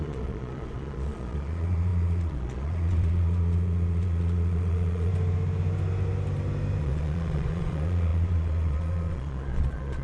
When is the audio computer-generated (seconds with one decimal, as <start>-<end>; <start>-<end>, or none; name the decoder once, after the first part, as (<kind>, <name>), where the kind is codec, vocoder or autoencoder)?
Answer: 0.0-5.1 (vocoder, Vocos); 6.8-10.0